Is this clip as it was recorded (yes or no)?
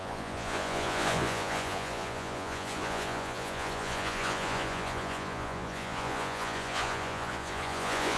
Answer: no